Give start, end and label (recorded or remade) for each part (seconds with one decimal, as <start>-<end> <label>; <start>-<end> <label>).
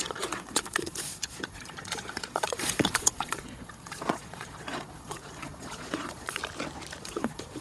0.0-6.4 remade; 6.4-7.0 recorded; 7.0-7.6 remade